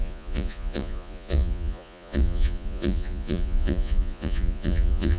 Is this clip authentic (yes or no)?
no